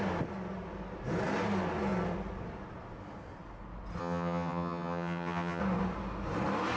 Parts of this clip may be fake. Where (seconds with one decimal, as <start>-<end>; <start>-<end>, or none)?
4.0-5.6